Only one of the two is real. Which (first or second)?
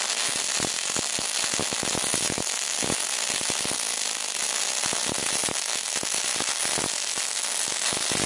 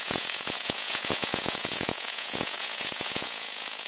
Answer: first